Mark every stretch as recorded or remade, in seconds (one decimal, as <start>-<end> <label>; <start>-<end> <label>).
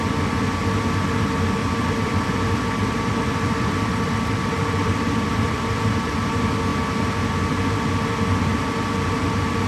0.0-1.6 recorded; 1.6-3.7 remade; 3.7-4.8 recorded; 4.8-6.3 remade; 6.3-9.7 recorded